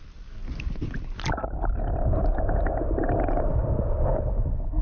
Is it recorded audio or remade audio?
recorded